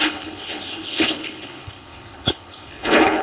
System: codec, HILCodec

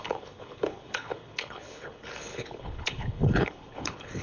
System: codec, HILCodec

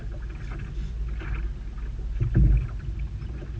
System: none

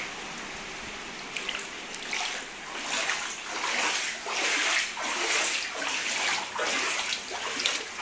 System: none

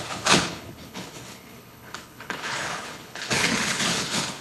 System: codec, HILCodec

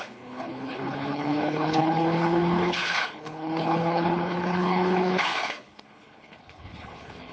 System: codec, HILCodec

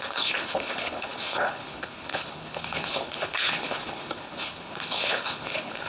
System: codec, HILCodec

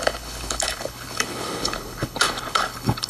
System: codec, HILCodec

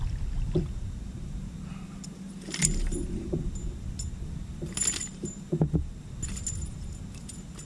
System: none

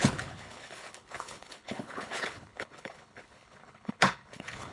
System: codec, HILCodec